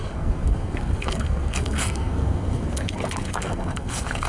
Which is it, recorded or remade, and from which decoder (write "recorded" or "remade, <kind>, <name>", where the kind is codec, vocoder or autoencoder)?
remade, codec, SNAC